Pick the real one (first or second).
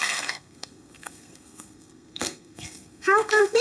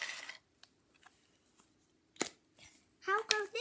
second